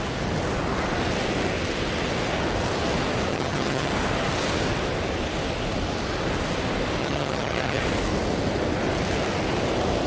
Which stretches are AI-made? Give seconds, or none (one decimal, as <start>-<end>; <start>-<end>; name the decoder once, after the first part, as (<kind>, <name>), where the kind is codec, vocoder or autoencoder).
3.3-3.9 (vocoder, HiFi-GAN); 7.0-7.8